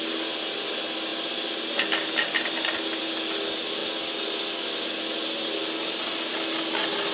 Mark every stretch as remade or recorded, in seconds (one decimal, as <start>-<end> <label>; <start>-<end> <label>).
0.0-7.1 recorded